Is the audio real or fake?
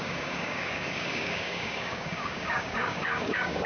fake